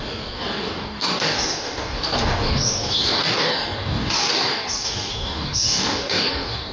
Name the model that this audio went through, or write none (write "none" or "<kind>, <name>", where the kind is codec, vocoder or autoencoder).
codec, DAC